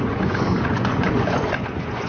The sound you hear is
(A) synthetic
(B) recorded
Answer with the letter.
A